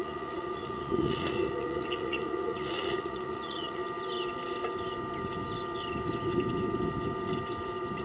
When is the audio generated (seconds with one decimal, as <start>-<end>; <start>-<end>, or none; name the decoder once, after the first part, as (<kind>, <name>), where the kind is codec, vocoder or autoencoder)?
0.0-3.8 (vocoder, Vocos)

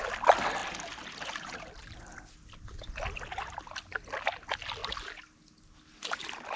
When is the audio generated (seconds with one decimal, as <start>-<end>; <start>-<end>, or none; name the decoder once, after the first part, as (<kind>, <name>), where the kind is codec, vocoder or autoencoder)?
none

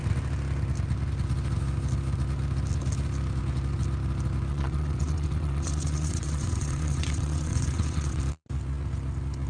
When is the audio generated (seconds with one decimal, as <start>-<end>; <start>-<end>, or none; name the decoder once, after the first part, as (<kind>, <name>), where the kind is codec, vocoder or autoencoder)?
4.5-8.2 (vocoder, WaveNeXt)

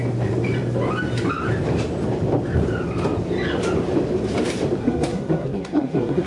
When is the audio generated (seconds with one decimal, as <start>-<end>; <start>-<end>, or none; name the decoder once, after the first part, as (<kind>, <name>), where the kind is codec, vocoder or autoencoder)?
4.8-6.3 (codec, SNAC)

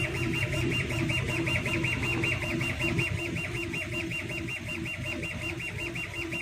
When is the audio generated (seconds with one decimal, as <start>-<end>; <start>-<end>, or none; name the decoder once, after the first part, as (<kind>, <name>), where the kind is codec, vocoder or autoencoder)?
0.4-1.7 (vocoder, BigVGAN v2)

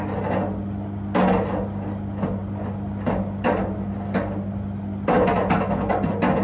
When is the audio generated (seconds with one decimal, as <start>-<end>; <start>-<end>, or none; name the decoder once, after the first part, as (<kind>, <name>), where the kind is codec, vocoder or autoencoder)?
none